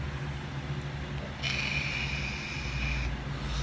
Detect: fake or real real